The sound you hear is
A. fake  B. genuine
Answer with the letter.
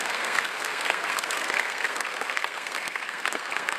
A